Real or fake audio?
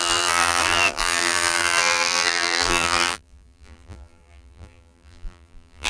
fake